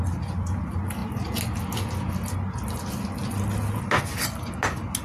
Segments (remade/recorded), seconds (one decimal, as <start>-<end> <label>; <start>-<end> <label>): 0.0-5.0 recorded